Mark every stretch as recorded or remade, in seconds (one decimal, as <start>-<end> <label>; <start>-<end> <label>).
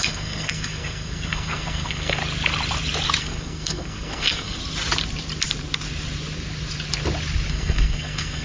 0.0-2.2 remade; 2.2-3.2 recorded; 3.2-4.6 remade; 4.6-7.5 recorded; 7.5-8.4 remade